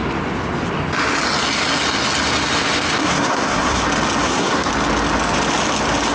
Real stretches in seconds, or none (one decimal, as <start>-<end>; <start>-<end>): 0.0-3.0; 3.8-4.2; 4.7-6.1